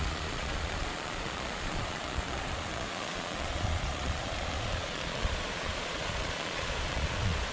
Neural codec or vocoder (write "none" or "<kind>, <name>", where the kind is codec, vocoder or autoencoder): vocoder, Vocos